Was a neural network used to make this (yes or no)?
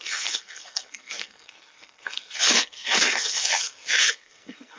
yes